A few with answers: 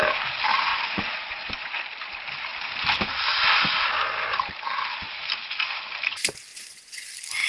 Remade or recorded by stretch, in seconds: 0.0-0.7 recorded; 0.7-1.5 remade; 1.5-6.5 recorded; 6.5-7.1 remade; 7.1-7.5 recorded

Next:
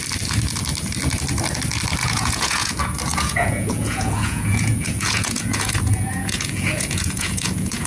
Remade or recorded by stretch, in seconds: 0.0-2.0 recorded; 2.0-2.7 remade; 2.7-3.1 recorded; 3.1-7.9 remade

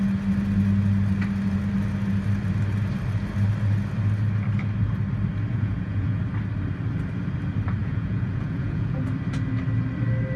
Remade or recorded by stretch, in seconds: 0.0-5.5 recorded; 5.5-6.2 remade; 6.2-7.8 recorded; 7.8-9.0 remade; 9.0-10.4 recorded

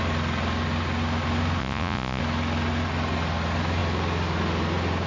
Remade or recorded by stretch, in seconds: 0.0-1.6 recorded; 1.6-2.2 remade; 2.2-5.1 recorded

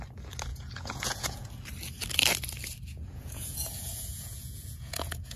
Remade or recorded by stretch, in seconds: 0.0-0.5 recorded; 0.5-1.5 remade; 1.5-2.9 recorded; 2.9-5.4 remade

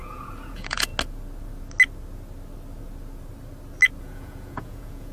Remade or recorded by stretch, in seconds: 0.0-0.9 remade; 0.9-4.0 recorded; 4.0-5.1 remade

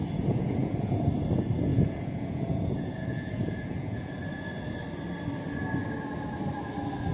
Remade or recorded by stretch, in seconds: 0.0-1.0 remade; 1.0-1.7 recorded; 1.7-4.1 remade; 4.1-7.1 recorded

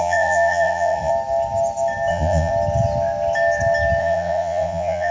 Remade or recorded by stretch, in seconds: 0.0-1.1 remade; 1.1-2.1 recorded; 2.1-2.5 remade; 2.5-4.0 recorded; 4.0-5.1 remade